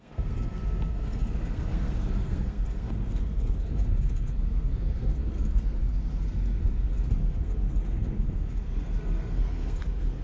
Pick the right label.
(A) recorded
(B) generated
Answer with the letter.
B